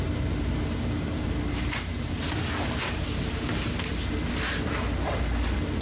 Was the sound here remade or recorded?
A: recorded